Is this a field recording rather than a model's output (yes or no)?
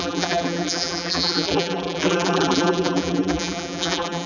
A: no